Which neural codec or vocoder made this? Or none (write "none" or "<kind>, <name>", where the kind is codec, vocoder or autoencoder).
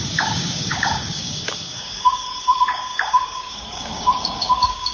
codec, DAC